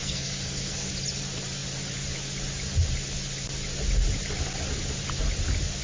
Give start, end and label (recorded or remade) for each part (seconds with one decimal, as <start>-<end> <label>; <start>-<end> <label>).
0.0-0.9 remade; 0.9-5.8 recorded